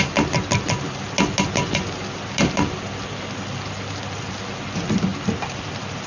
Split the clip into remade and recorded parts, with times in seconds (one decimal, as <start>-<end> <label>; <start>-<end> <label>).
0.0-6.1 recorded